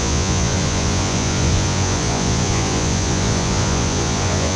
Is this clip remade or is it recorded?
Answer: remade